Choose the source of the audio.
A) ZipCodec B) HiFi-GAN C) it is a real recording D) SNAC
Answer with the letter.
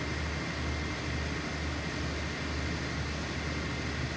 C